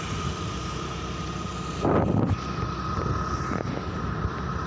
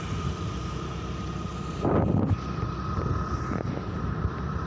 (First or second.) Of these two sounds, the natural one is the first